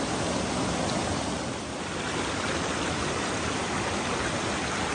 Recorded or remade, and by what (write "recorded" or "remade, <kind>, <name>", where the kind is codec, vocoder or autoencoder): recorded